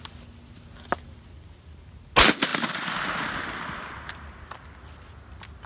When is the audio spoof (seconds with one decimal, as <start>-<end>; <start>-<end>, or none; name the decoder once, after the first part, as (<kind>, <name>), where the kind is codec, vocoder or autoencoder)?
none